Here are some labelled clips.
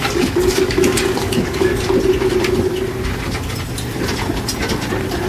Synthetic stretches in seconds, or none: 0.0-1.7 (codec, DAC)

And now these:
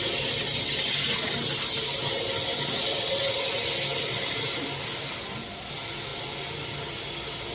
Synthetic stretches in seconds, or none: none

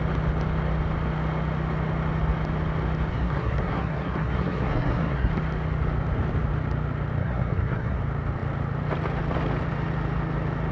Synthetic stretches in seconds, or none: 3.1-5.3 (codec, SNAC); 7.2-8.0

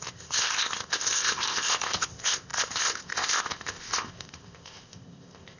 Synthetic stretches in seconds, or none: 0.0-5.6 (codec, ZipCodec)

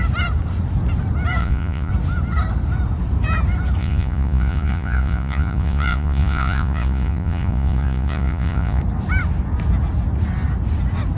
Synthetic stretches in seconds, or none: 1.4-1.9 (vocoder, Vocos); 3.8-8.8

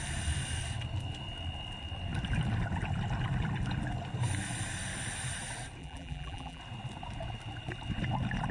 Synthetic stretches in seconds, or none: 5.8-6.6 (vocoder, BigVGAN v2)